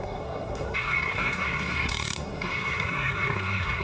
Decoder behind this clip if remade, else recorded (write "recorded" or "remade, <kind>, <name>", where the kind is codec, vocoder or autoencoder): remade, codec, SNAC